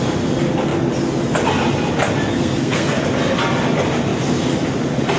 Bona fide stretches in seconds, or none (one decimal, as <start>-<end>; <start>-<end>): 0.0-2.3; 3.0-5.2